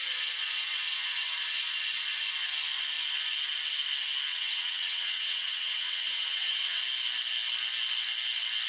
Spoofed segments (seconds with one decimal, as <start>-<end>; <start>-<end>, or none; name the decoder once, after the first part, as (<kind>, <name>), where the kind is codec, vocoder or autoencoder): 4.3-6.8 (vocoder, WaveNeXt)